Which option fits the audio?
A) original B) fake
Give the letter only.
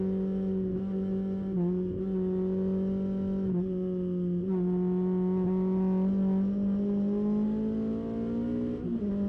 A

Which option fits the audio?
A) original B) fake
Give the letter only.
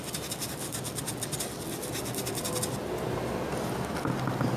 A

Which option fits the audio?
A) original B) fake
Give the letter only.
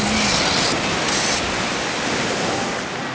A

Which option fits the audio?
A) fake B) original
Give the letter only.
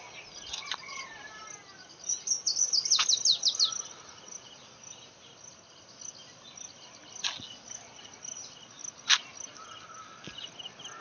B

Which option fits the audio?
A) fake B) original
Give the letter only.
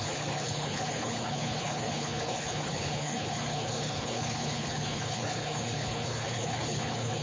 A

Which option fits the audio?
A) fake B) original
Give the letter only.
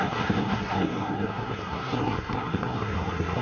A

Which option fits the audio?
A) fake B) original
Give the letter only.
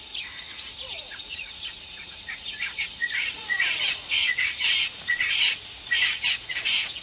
A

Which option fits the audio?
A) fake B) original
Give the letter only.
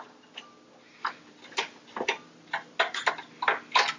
B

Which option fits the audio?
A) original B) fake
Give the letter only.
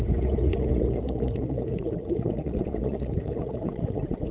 B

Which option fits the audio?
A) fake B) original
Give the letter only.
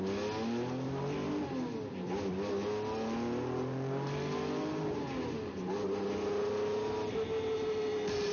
B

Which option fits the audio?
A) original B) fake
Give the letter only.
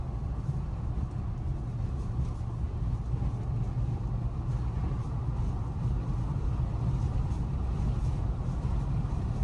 A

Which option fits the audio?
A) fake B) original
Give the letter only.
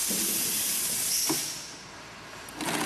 B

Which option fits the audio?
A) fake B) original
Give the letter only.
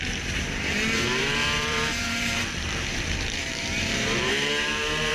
A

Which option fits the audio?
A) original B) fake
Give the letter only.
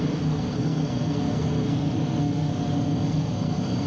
B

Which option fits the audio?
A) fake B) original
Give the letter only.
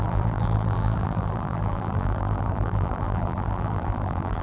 A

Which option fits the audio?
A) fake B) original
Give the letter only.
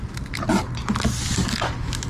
B